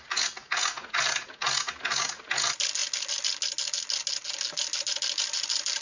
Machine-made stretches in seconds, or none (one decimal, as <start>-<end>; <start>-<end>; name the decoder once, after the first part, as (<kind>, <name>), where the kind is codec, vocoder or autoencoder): none